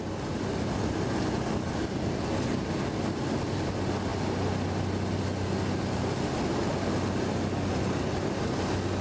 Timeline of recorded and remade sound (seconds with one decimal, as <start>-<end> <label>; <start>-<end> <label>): 0.0-9.0 recorded